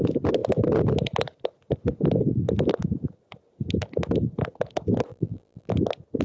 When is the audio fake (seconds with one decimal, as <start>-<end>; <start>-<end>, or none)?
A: 5.1-5.7